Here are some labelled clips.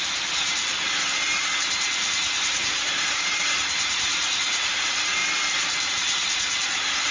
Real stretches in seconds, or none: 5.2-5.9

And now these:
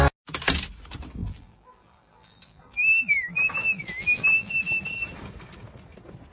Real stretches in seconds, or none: 0.0-1.2; 4.5-6.3